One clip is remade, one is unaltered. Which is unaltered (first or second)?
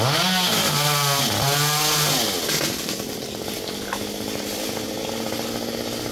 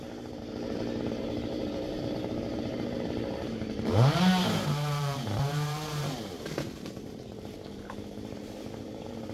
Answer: first